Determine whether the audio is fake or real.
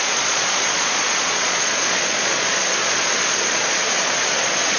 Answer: fake